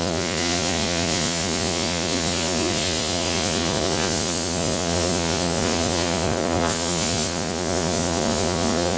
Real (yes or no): no